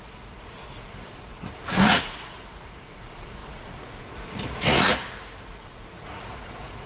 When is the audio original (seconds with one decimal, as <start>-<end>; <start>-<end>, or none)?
4.9-5.5